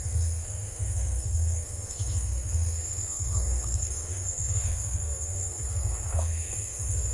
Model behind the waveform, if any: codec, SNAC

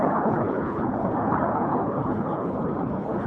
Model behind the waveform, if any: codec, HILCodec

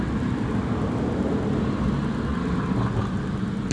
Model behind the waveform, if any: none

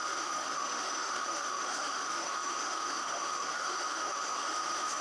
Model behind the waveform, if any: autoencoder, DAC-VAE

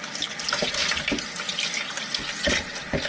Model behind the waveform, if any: none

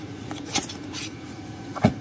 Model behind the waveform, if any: vocoder, Vocos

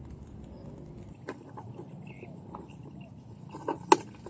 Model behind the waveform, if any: none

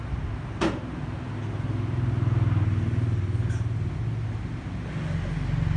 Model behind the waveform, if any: none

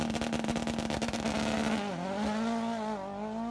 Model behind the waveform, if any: none